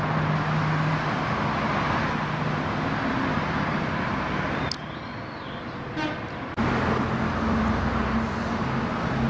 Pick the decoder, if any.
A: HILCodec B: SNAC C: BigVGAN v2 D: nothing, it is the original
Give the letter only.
D